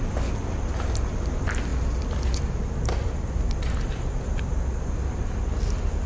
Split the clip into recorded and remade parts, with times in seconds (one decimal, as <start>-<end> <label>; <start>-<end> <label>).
0.0-6.1 recorded